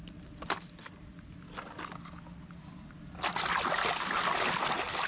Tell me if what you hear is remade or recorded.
recorded